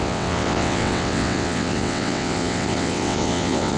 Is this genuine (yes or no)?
no